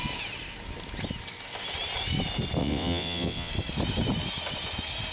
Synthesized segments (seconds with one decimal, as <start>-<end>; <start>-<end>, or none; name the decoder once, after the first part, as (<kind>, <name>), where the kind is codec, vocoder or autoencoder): 2.6-3.5 (vocoder, WaveNeXt)